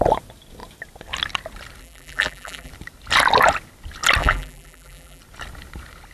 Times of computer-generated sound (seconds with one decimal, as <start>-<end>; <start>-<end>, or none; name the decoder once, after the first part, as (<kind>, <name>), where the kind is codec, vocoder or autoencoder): 1.8-2.7 (vocoder, BigVGAN v2); 4.2-5.2